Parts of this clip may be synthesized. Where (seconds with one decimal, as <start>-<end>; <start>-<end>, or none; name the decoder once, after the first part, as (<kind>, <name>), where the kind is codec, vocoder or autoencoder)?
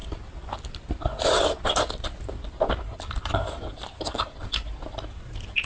none